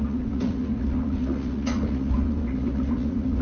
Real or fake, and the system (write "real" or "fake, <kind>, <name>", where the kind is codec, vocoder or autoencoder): fake, vocoder, Vocos